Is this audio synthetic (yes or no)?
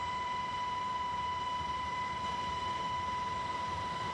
yes